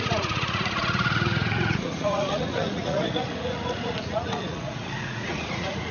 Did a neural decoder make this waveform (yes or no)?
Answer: yes